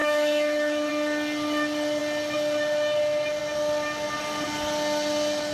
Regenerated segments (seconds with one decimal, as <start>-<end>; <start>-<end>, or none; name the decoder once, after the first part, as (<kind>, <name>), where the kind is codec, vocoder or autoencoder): 0.0-0.9 (autoencoder, DAC-VAE)